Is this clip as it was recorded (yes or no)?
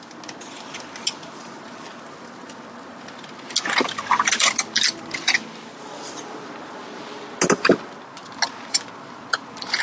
yes